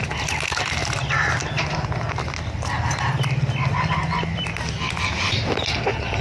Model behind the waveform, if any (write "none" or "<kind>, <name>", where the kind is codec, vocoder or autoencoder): none